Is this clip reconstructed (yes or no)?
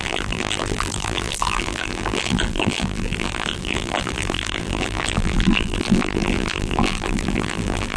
yes